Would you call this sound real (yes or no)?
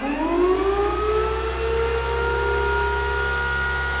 yes